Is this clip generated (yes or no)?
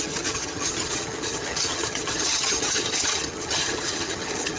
yes